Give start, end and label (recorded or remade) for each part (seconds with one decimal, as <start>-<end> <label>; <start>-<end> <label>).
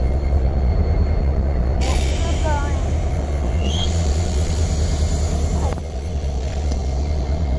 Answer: 0.0-0.7 remade; 0.7-1.2 recorded; 1.2-2.1 remade; 2.1-3.1 recorded; 3.1-4.6 remade; 4.6-5.8 recorded; 5.8-7.6 remade